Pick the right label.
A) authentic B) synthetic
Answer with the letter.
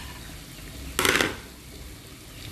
A